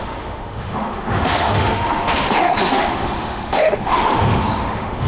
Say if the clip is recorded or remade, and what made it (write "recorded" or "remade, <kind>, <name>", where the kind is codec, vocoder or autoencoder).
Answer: remade, autoencoder, DAC-VAE